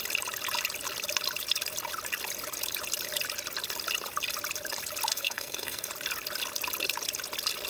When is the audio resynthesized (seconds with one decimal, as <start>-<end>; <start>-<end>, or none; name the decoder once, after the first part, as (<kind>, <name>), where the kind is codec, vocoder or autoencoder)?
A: 5.1-5.9 (codec, SNAC)